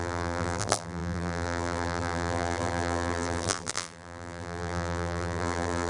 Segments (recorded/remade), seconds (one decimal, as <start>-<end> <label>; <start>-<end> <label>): 0.0-5.9 remade